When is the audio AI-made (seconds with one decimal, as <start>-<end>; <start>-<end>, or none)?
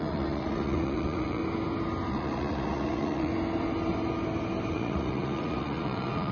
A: 0.0-1.4; 2.1-3.3; 4.7-6.3